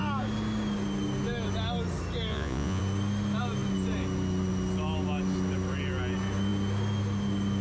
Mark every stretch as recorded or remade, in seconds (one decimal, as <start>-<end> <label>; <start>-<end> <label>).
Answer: 0.0-2.3 recorded; 2.3-2.8 remade; 2.8-7.6 recorded